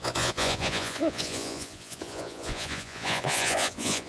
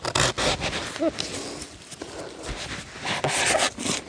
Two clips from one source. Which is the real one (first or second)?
second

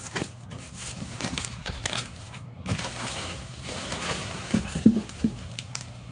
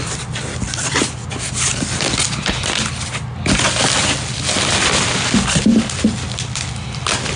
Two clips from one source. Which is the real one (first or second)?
second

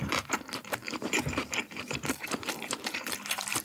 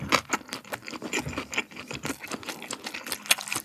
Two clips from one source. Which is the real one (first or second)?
second